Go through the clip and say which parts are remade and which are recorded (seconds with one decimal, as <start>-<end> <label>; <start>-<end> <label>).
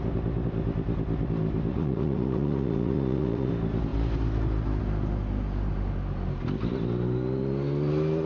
0.0-1.7 recorded; 1.7-3.5 remade; 3.5-8.3 recorded